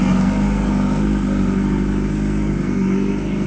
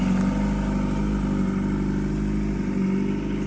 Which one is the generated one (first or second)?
first